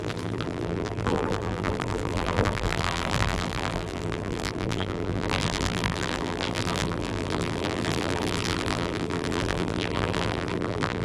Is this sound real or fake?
fake